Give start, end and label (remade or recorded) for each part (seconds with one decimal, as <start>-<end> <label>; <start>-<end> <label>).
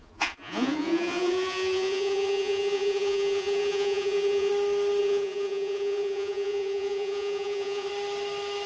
0.0-4.5 remade; 4.5-5.0 recorded; 5.0-7.9 remade; 7.9-8.7 recorded